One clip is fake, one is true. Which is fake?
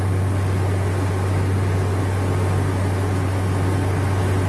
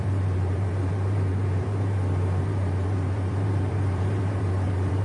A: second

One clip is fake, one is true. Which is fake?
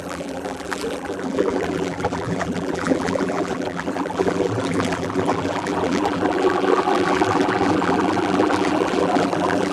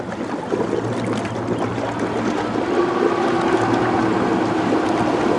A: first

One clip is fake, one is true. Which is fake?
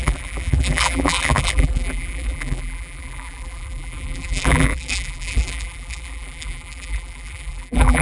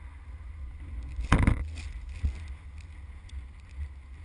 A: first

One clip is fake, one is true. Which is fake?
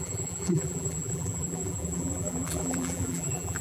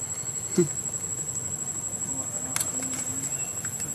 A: first